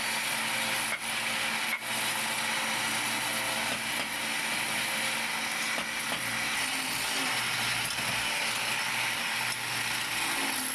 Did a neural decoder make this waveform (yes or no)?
no